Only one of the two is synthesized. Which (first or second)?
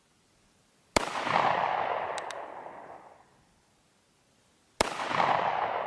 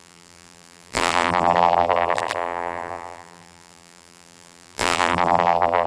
second